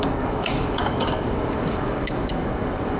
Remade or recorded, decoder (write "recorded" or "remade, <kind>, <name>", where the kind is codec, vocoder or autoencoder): remade, codec, DAC